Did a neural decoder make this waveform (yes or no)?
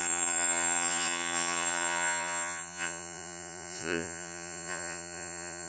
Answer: yes